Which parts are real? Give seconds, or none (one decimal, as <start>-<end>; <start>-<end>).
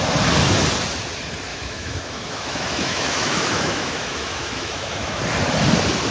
0.0-1.5; 5.2-6.1